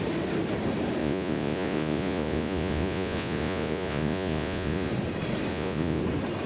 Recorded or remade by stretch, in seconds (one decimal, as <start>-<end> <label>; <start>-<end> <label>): 0.0-1.0 recorded; 1.0-4.9 remade; 4.9-5.5 recorded; 5.5-6.0 remade; 6.0-6.5 recorded